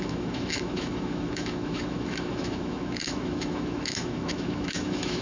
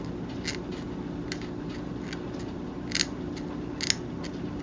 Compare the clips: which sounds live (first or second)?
second